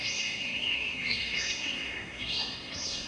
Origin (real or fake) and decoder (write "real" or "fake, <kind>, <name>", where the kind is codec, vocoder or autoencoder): fake, codec, SNAC